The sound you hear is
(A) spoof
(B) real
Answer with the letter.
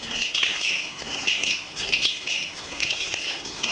A